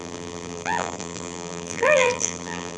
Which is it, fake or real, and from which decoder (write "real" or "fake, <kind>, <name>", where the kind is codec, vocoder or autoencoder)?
fake, vocoder, BigVGAN v2